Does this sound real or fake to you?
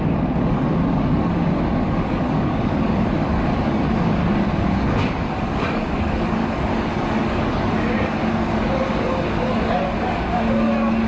fake